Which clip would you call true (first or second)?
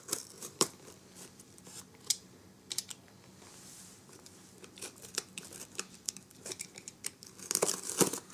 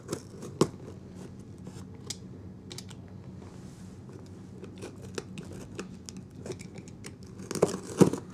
second